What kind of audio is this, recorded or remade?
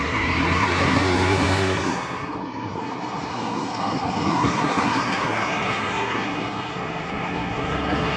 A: remade